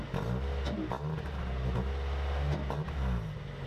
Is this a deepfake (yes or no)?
no